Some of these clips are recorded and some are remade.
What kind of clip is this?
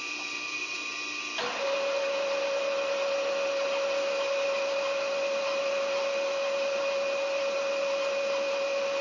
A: recorded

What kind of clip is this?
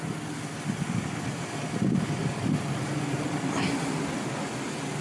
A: recorded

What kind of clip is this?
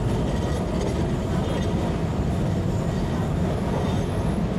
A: recorded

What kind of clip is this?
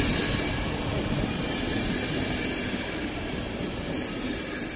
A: recorded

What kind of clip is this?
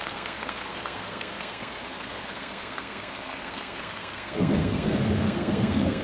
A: remade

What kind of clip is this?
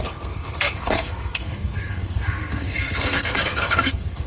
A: remade